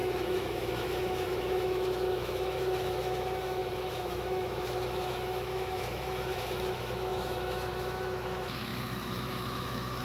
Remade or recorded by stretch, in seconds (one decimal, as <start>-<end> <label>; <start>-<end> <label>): 0.0-10.0 remade